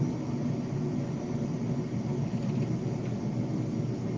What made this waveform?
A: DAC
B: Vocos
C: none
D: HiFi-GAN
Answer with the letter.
C